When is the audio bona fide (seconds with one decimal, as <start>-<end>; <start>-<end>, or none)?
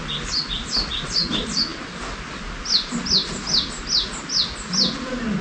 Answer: 0.0-5.4